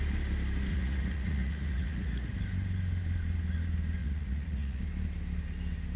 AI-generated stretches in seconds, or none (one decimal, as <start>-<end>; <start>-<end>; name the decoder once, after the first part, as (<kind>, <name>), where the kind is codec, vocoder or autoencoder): 0.7-2.3 (vocoder, Vocos); 4.0-4.8